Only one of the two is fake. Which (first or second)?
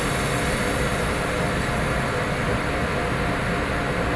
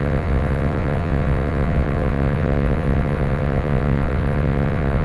second